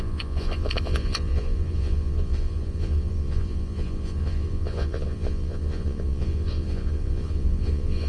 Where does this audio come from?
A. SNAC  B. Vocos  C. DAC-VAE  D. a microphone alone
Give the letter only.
B